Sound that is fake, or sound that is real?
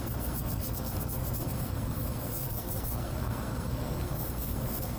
fake